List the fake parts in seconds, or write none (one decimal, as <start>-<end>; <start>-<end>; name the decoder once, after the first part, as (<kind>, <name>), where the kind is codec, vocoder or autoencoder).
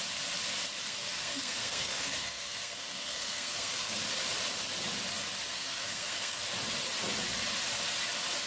0.8-4.0 (codec, SNAC); 5.5-6.4